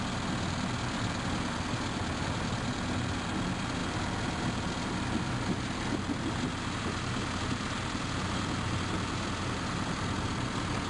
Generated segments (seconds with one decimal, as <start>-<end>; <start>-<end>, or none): none